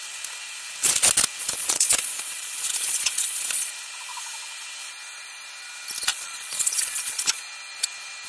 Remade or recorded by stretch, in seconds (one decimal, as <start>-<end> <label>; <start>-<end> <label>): 0.0-1.4 recorded; 1.4-3.7 remade; 3.7-6.1 recorded; 6.1-7.4 remade; 7.4-8.3 recorded

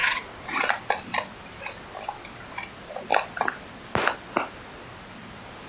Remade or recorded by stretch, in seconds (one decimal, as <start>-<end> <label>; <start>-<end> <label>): 0.0-0.7 remade; 0.7-5.7 recorded

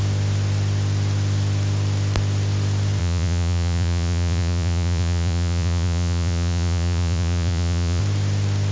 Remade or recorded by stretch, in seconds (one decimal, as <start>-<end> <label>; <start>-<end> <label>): 0.0-3.0 recorded; 3.0-8.0 remade; 8.0-8.7 recorded